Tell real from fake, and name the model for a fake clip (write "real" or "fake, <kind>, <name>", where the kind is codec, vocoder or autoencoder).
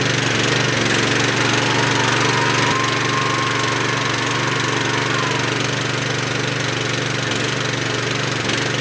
real